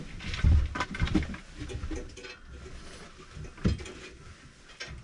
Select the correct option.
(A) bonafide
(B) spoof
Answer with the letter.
A